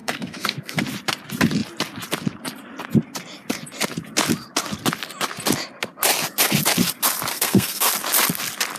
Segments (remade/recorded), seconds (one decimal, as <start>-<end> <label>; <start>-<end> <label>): 0.0-0.8 remade; 0.8-7.3 recorded; 7.3-7.9 remade; 7.9-8.8 recorded